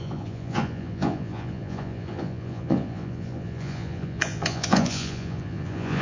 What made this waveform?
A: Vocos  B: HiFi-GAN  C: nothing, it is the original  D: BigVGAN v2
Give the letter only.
A